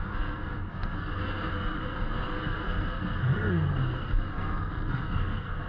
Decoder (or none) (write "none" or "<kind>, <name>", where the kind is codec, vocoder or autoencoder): codec, SNAC